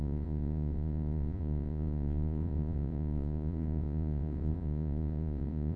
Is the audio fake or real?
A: fake